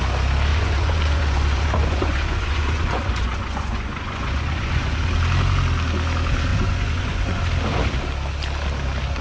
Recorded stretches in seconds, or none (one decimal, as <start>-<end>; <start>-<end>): 0.0-0.5; 5.1-6.5; 7.4-9.2